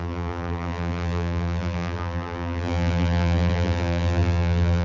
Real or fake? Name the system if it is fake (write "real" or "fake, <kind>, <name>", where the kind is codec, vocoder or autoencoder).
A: fake, vocoder, BigVGAN v2